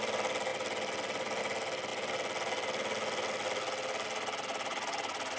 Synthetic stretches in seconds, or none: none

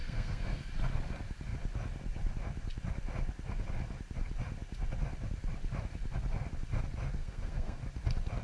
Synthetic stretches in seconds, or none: 0.0-0.7 (codec, SNAC); 7.2-7.8

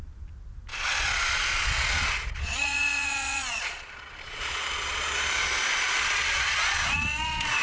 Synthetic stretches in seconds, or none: 0.7-5.3 (vocoder, Vocos); 5.7-7.6

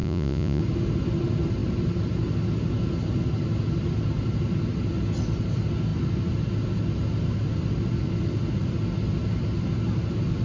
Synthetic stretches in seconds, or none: 0.0-0.6 (vocoder, Vocos)

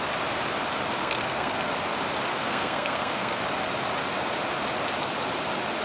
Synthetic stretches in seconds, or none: 1.0-1.7 (codec, SNAC); 2.3-3.4